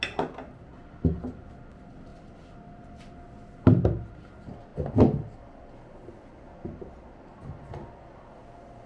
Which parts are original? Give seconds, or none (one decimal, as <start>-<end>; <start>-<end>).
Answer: 0.0-8.9